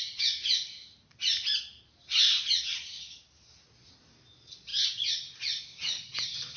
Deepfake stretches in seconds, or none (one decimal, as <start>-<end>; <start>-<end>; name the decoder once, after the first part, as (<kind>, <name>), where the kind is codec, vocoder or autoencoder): 4.7-5.3 (vocoder, BigVGAN v2)